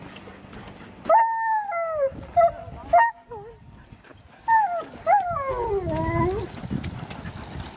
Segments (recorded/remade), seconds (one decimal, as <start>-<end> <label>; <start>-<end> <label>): 0.0-7.8 recorded

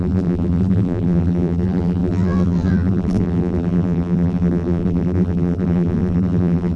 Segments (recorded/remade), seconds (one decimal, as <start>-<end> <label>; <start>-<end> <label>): 0.0-6.8 remade